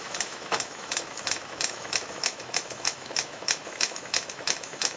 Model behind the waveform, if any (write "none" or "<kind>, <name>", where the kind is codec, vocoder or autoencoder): autoencoder, DAC-VAE